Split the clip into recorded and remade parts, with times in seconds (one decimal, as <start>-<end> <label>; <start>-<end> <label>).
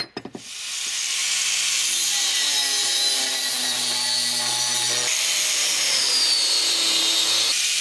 0.0-7.8 recorded